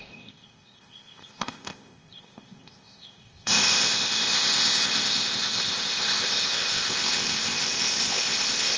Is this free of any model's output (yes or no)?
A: no